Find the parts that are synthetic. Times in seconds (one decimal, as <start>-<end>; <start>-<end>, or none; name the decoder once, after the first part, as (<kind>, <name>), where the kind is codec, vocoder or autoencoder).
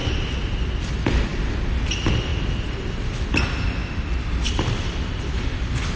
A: 0.8-1.3 (vocoder, BigVGAN v2); 1.9-3.8; 4.5-6.0